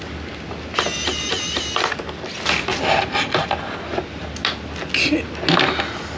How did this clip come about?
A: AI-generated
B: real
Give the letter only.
B